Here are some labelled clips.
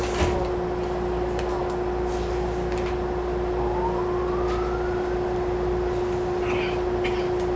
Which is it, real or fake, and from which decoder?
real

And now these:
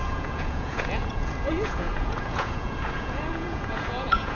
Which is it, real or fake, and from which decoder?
fake, vocoder, Vocos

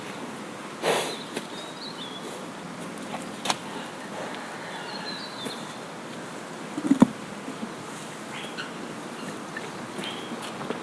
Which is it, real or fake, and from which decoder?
real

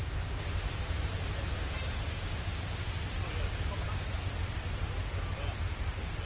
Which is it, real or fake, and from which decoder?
real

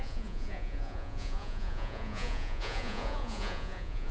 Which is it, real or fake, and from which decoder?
fake, vocoder, Vocos